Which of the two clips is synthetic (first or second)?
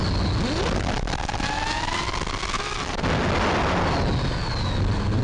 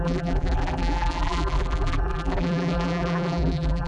second